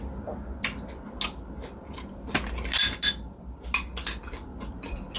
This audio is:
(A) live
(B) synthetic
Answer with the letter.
A